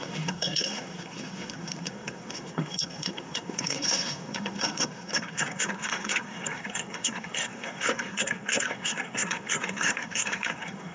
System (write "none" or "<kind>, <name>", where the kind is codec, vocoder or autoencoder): codec, SNAC